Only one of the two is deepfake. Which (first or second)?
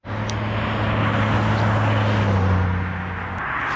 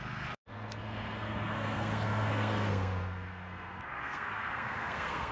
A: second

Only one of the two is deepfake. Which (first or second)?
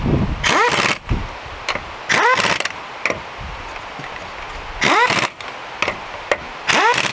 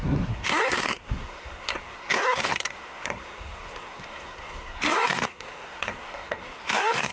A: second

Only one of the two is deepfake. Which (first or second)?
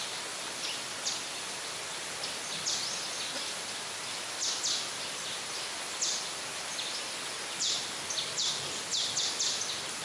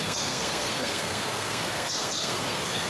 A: second